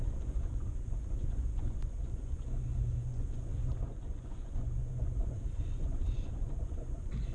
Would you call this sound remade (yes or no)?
yes